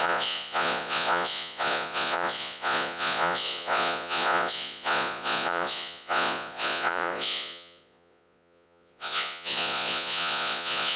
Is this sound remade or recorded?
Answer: remade